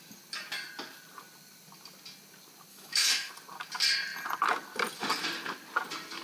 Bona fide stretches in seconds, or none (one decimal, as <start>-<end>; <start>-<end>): 0.0-2.7; 3.3-6.2

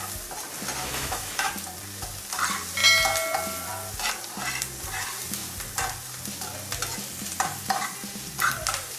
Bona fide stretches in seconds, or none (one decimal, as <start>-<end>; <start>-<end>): 0.0-0.8; 1.5-9.0

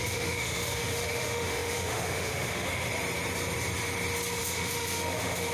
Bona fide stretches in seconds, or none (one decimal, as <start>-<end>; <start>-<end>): 2.9-4.4